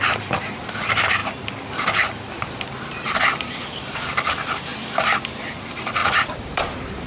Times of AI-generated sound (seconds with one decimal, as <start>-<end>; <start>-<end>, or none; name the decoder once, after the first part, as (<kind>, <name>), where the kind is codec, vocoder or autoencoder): 0.0-1.2 (vocoder, BigVGAN v2); 2.8-4.7; 5.6-7.1